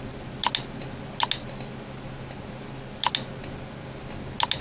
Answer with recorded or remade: recorded